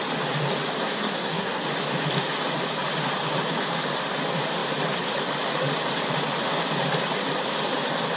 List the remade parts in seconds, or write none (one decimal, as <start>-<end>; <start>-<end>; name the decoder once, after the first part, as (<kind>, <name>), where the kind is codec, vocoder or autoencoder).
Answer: 0.8-1.6 (codec, SNAC)